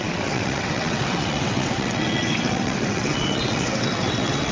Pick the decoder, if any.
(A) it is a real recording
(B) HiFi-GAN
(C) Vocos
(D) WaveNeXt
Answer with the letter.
D